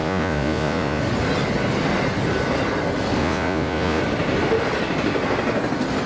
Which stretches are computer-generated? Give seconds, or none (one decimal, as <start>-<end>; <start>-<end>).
0.0-1.0; 3.2-4.0